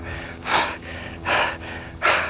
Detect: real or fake fake